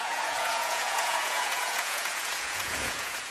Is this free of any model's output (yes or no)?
no